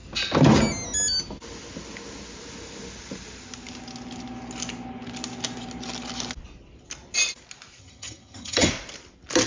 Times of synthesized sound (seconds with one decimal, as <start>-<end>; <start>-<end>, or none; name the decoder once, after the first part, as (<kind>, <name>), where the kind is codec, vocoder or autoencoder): 7.8-8.7 (vocoder, HiFi-GAN)